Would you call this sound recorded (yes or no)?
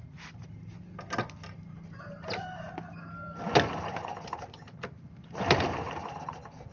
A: yes